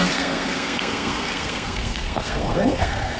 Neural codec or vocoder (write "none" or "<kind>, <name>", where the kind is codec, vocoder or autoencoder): codec, SNAC